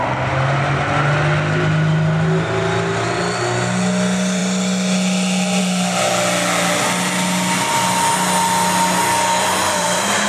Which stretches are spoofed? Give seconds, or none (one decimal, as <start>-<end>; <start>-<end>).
none